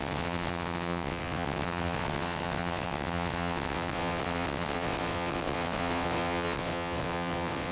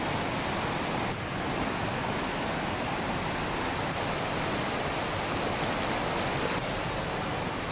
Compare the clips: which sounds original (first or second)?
second